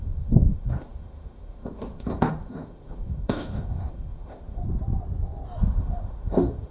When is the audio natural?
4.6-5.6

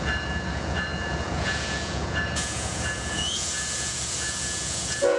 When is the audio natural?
none

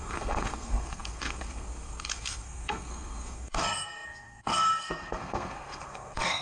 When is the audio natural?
none

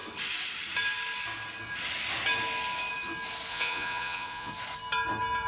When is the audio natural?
0.0-3.5; 4.5-5.5